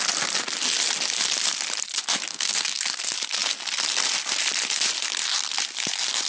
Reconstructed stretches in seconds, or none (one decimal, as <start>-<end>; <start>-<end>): 2.3-2.8